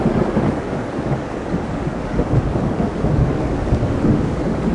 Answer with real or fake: fake